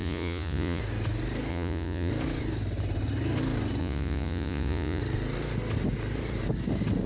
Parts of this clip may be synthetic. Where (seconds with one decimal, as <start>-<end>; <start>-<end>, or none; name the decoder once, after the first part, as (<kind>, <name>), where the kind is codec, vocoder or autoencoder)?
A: 0.0-0.8 (vocoder, Vocos); 1.5-2.1; 3.8-5.0